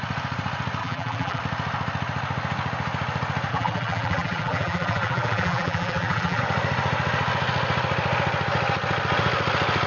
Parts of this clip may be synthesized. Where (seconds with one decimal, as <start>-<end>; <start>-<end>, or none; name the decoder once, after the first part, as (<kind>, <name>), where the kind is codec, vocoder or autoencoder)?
0.8-1.4 (vocoder, BigVGAN v2); 3.5-6.4